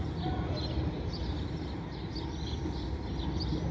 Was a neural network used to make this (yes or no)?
no